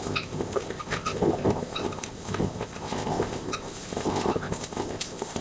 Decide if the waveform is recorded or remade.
remade